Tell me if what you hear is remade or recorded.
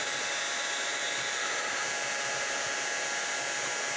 recorded